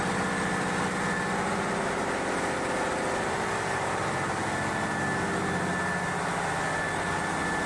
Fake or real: real